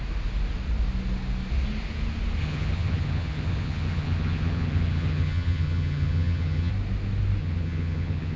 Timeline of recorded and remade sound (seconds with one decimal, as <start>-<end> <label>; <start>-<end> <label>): 0.0-2.4 recorded; 2.4-6.7 remade; 6.7-7.4 recorded; 7.4-8.4 remade